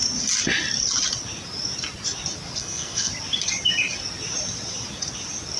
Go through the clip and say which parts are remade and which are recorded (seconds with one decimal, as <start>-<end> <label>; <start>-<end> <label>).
0.0-2.6 recorded; 2.6-3.1 remade; 3.1-5.6 recorded